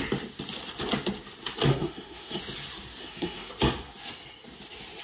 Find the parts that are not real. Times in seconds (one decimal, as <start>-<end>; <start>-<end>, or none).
1.7-2.4; 3.0-3.5